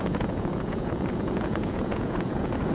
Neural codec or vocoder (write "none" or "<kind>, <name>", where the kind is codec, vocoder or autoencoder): vocoder, Vocos